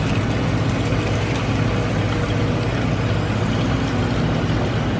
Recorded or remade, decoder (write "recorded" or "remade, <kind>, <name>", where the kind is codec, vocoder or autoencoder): recorded